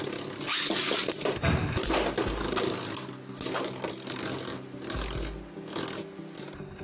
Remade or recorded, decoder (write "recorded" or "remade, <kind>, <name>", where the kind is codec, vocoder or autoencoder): recorded